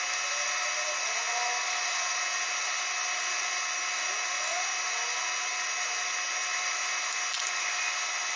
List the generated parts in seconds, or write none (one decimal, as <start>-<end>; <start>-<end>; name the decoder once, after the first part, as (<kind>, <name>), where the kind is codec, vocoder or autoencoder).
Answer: none